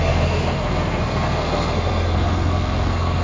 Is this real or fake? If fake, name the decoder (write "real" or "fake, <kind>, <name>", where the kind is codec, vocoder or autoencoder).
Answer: fake, codec, SNAC